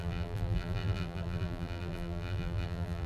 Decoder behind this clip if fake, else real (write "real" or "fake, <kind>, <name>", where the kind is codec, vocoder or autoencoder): fake, vocoder, BigVGAN v2